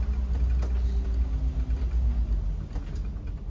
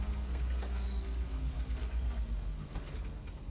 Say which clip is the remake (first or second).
second